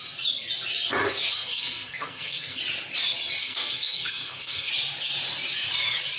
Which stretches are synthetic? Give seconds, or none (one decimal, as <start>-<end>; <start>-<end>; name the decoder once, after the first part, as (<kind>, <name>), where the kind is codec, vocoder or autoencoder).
1.3-2.6 (codec, SNAC); 3.4-4.7